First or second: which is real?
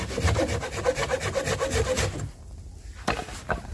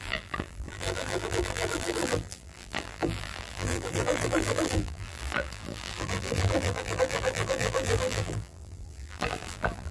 first